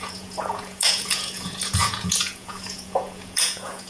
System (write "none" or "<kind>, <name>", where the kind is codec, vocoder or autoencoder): vocoder, Vocos